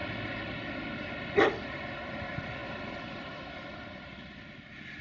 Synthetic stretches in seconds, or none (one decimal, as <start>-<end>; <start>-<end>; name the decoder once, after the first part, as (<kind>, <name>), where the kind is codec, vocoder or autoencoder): none